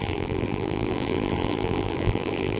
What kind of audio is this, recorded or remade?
remade